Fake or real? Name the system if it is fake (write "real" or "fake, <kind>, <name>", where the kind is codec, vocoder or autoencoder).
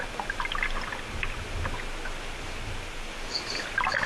real